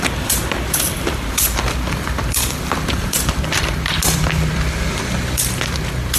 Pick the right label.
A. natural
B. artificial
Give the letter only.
B